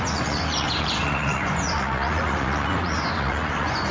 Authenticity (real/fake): fake